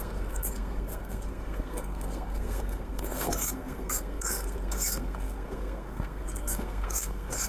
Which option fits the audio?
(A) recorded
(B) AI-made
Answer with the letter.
B